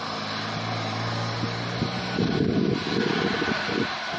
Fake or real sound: real